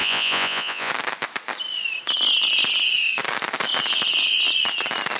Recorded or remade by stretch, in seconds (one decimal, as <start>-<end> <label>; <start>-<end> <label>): 0.0-0.9 remade; 0.9-5.2 recorded